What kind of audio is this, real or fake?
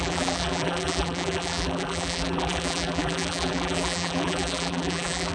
fake